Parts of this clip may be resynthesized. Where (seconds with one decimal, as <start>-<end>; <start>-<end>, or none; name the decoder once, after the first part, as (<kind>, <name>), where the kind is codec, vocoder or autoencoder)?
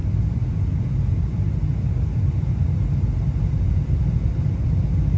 none